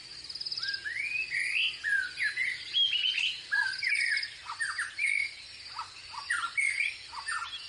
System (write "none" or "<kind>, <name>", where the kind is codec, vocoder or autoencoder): none